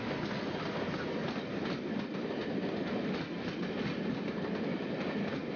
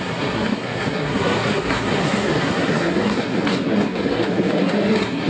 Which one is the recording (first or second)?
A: first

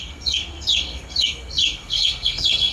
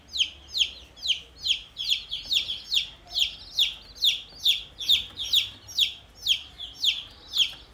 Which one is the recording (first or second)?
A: second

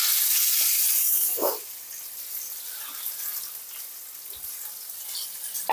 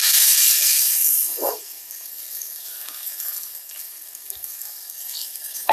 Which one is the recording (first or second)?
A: first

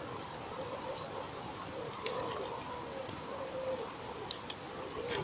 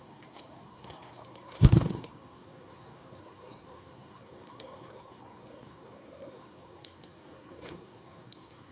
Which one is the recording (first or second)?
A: first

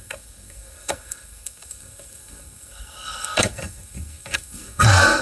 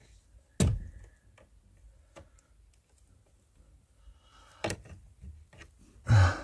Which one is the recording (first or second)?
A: second